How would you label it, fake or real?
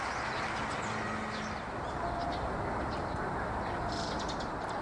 fake